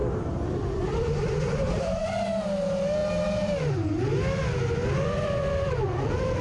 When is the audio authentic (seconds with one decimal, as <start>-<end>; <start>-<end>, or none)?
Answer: 2.1-4.8